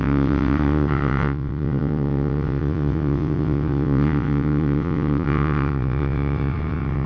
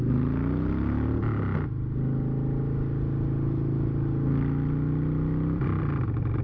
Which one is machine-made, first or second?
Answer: first